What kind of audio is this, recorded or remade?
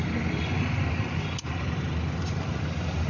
recorded